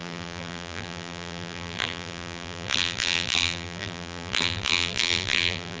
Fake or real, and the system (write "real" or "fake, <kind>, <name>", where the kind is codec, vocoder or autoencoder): fake, vocoder, BigVGAN v2